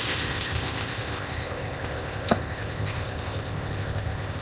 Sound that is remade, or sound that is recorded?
remade